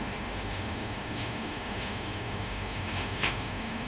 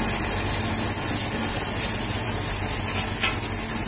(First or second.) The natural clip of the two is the second